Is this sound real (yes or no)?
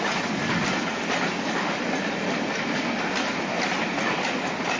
yes